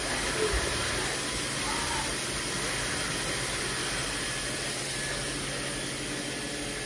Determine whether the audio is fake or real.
real